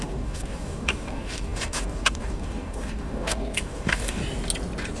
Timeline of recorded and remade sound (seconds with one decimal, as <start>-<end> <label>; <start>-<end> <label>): 0.0-4.2 remade; 4.2-5.0 recorded